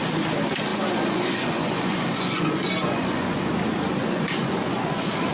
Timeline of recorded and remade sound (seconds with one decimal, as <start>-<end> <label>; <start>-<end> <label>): 0.0-0.7 recorded; 0.7-3.4 remade; 3.4-4.0 recorded; 4.0-5.3 remade